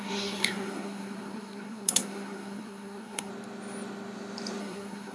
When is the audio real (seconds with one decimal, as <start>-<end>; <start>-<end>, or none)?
3.3-4.6